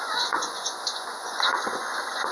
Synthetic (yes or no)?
yes